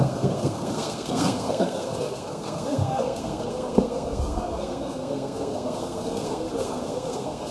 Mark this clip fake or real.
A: fake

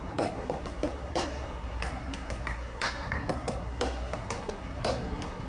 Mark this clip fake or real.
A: fake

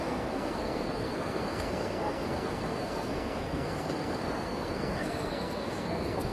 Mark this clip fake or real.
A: fake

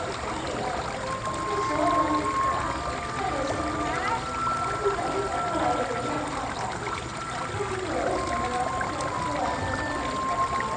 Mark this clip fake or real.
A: real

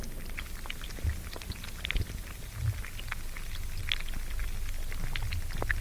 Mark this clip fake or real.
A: real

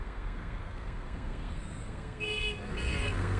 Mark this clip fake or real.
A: fake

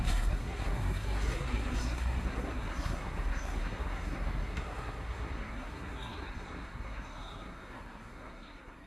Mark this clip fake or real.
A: fake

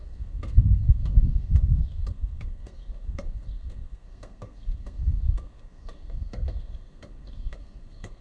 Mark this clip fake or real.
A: fake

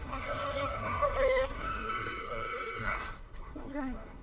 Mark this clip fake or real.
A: fake